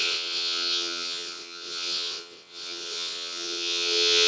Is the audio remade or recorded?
remade